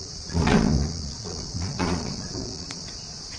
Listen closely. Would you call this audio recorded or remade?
remade